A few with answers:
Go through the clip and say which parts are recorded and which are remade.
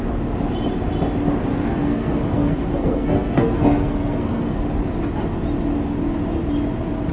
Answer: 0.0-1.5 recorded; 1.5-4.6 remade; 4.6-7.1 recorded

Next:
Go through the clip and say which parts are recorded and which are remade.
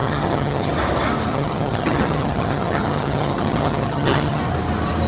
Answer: 0.0-0.7 remade; 0.7-1.3 recorded; 1.3-4.4 remade; 4.4-5.1 recorded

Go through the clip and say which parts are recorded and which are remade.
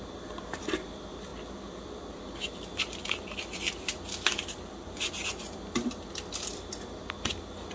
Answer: 0.0-7.7 recorded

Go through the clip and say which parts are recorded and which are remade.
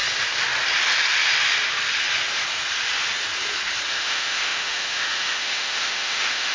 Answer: 0.0-3.9 recorded; 3.9-6.5 remade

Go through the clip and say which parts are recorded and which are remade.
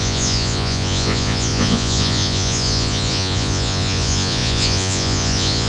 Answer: 0.0-5.7 remade